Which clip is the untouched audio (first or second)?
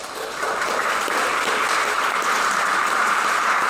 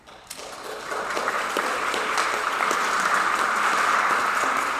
second